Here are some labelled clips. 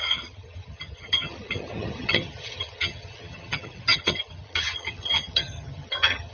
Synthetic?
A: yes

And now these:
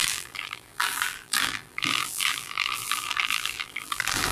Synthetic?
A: yes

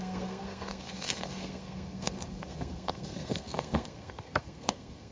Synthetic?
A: yes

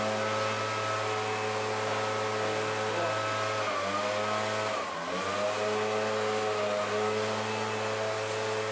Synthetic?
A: no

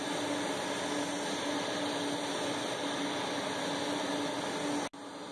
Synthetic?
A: no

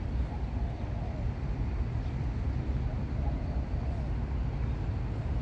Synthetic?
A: no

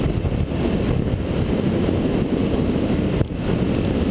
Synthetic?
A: no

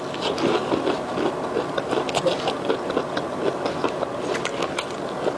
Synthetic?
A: no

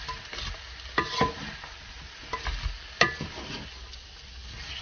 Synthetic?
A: no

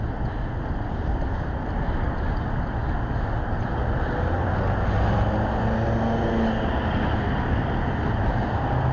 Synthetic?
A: no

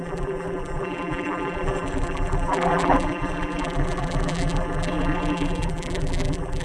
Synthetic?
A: yes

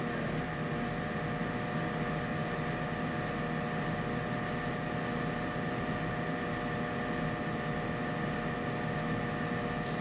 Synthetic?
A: no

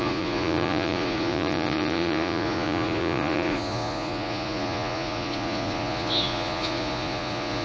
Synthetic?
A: yes